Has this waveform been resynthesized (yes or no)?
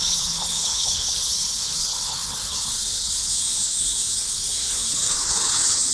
yes